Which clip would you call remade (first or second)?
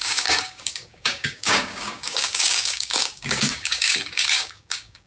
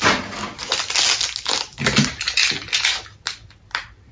first